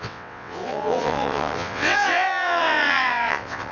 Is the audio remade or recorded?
remade